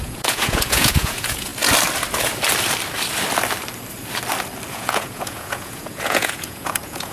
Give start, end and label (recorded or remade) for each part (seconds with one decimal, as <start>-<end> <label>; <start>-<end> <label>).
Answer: 0.0-1.5 remade; 1.5-4.7 recorded; 4.7-7.1 remade